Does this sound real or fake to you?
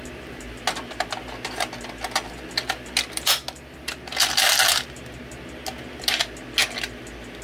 real